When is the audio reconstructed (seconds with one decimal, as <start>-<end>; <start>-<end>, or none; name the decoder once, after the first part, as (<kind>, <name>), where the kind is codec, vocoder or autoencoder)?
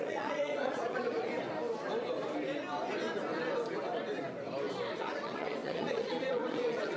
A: 0.0-1.3 (vocoder, Vocos); 5.0-7.0